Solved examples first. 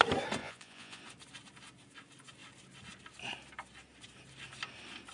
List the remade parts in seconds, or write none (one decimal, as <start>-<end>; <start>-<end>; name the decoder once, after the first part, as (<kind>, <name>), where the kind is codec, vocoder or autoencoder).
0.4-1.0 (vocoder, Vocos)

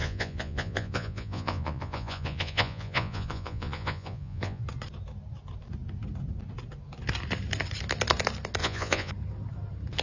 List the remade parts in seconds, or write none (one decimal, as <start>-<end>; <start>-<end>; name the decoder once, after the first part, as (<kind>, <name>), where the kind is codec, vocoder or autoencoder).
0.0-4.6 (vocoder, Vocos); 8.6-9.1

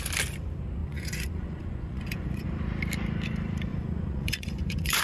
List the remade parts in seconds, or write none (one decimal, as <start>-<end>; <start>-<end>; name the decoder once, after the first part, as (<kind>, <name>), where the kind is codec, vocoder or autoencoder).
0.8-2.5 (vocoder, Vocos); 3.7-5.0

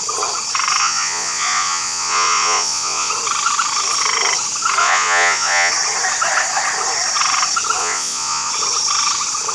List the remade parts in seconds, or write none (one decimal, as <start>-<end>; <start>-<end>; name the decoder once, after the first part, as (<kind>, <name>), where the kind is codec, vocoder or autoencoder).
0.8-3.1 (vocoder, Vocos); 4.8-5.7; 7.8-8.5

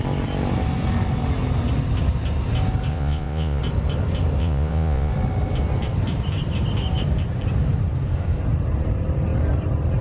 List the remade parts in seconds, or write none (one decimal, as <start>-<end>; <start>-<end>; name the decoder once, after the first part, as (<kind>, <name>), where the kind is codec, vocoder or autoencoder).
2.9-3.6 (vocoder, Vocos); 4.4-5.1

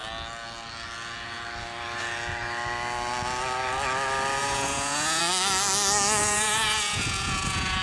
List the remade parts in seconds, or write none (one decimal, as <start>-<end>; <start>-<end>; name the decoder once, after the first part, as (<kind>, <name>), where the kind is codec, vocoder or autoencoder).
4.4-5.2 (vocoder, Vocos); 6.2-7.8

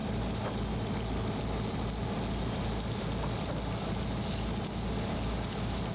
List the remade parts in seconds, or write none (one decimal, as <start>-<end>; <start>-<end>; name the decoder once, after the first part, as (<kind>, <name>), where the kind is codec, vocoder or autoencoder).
none